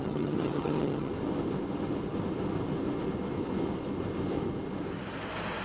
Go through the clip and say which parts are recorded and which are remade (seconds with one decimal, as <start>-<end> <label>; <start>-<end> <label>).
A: 0.0-1.1 remade; 1.1-5.6 recorded